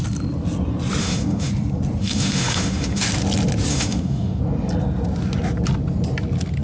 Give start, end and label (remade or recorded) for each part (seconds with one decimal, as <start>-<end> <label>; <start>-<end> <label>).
0.0-1.0 recorded; 1.0-1.5 remade; 1.5-2.0 recorded; 2.0-3.0 remade; 3.0-3.7 recorded; 3.7-4.4 remade; 4.4-6.6 recorded